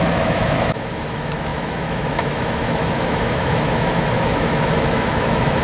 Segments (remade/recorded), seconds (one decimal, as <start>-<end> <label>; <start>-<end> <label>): 0.0-5.6 remade